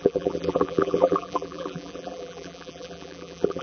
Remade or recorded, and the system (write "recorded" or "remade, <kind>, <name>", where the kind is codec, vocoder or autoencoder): remade, vocoder, BigVGAN v2